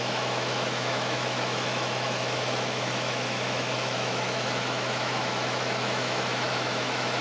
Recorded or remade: remade